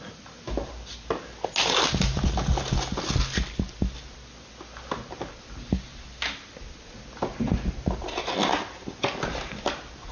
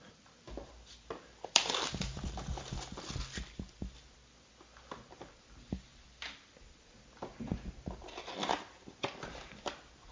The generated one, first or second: second